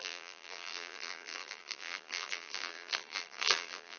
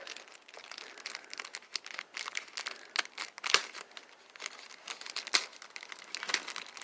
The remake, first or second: first